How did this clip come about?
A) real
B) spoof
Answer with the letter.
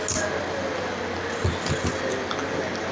A